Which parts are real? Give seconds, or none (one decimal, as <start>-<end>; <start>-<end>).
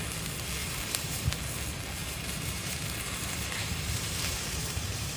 0.0-0.6; 1.4-2.0